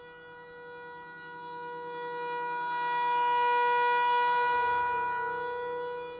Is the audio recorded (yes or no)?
yes